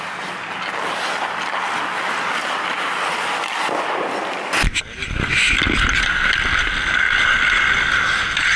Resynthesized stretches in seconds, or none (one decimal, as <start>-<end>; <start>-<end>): none